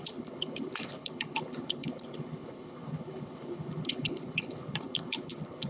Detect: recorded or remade remade